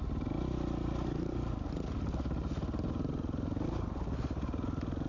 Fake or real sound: real